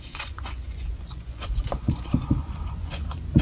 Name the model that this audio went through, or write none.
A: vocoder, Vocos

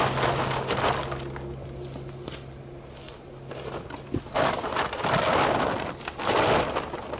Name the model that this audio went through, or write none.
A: none